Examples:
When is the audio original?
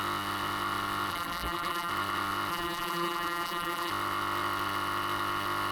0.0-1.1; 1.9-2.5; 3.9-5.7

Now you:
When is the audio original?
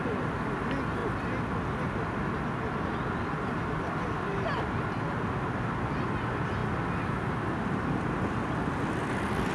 0.0-9.5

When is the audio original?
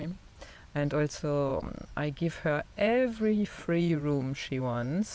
none